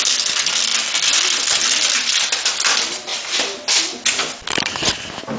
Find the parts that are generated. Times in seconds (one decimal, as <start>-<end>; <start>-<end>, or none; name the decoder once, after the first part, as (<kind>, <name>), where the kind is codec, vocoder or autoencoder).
0.0-3.1 (vocoder, BigVGAN v2); 4.1-5.4